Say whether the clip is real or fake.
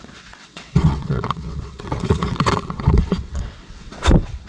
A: fake